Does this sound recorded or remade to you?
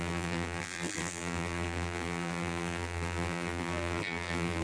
remade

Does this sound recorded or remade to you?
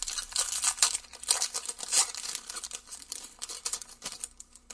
recorded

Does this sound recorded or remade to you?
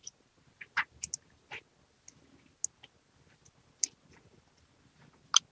recorded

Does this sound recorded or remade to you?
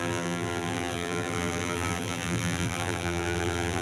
remade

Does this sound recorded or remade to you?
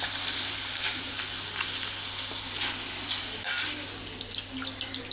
recorded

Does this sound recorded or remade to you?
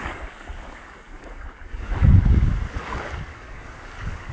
remade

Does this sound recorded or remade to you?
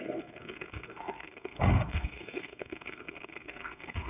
remade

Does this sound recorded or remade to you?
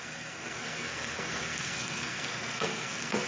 remade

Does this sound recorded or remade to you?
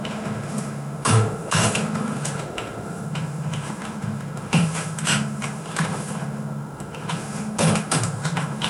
remade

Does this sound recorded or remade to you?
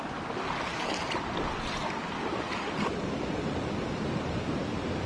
recorded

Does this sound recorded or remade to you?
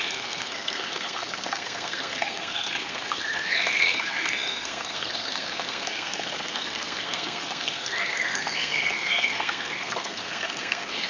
remade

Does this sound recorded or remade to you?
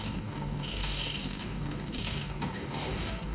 remade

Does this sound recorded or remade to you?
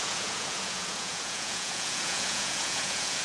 remade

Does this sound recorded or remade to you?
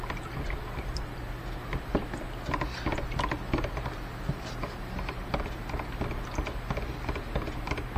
recorded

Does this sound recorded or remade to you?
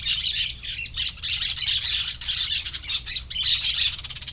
recorded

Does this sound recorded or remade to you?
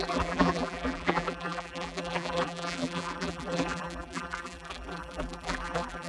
remade